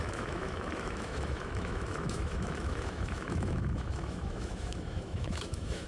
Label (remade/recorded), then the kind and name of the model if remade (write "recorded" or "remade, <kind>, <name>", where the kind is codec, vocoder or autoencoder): remade, autoencoder, DAC-VAE